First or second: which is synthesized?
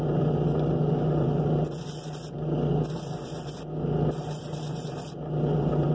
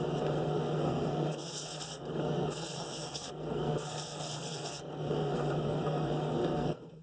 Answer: second